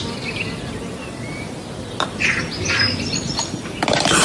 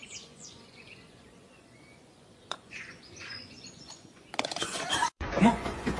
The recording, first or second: first